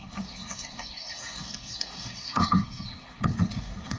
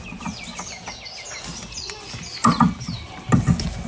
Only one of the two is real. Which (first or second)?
second